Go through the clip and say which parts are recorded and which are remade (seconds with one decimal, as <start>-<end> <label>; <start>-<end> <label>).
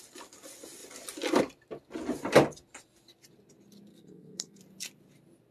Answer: 0.0-3.9 recorded; 3.9-4.6 remade; 4.6-5.5 recorded